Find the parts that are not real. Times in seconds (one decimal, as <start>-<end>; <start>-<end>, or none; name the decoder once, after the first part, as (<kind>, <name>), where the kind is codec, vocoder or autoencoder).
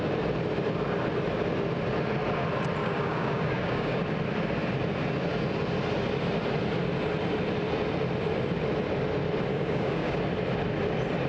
2.8-4.0 (codec, DAC); 9.5-10.2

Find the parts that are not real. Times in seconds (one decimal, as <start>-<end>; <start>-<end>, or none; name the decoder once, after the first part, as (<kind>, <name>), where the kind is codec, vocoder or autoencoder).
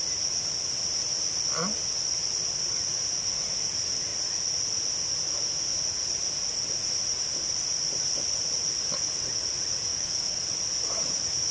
9.9-10.4 (codec, DAC)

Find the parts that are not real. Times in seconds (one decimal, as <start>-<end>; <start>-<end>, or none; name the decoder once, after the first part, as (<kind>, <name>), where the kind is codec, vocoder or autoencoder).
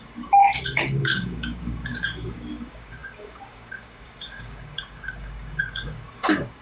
0.0-6.6 (codec, DAC)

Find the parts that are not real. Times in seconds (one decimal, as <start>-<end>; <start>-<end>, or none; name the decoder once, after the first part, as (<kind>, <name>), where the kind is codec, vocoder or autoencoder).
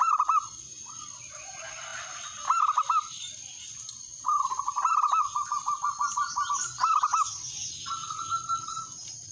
none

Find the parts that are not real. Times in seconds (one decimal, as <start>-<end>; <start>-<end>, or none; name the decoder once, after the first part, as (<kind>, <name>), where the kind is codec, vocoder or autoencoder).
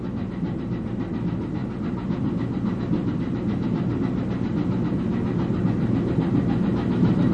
none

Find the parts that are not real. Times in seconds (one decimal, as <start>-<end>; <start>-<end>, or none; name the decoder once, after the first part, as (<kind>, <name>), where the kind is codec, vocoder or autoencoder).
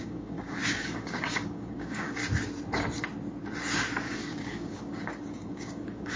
0.0-2.2 (codec, DAC); 4.0-6.2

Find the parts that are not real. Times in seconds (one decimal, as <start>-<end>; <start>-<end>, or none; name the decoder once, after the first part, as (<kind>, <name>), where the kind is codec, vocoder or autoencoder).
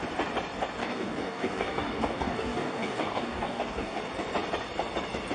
0.8-4.0 (codec, DAC)